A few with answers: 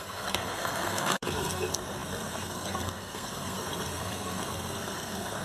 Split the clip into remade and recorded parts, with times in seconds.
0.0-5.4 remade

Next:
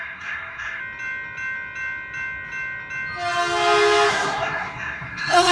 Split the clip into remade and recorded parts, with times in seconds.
0.0-0.8 remade; 0.8-4.1 recorded; 4.1-5.5 remade

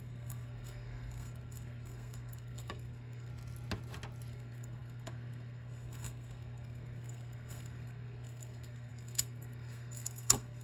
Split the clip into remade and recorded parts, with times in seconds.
0.0-3.3 remade; 3.3-4.3 recorded; 4.3-10.6 remade

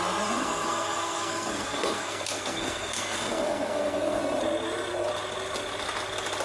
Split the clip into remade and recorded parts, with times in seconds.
0.0-0.4 recorded; 0.4-4.2 remade; 4.2-6.4 recorded